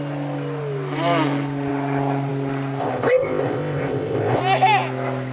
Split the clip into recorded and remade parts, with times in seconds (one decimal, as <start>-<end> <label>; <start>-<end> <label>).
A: 0.0-2.8 recorded; 2.8-4.4 remade; 4.4-5.3 recorded